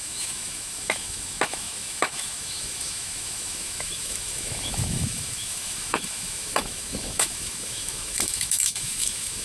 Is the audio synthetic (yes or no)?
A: yes